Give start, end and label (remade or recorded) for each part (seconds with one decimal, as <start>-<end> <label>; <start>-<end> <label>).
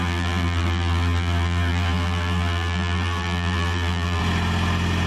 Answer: 0.0-4.2 remade; 4.2-5.1 recorded